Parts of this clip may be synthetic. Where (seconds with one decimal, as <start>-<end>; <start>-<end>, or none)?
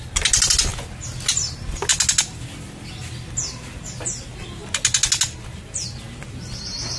none